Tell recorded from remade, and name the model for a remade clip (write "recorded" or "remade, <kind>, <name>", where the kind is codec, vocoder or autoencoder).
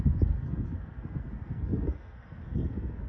remade, codec, SNAC